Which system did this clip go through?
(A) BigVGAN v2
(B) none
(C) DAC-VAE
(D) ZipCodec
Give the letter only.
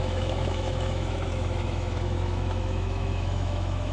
C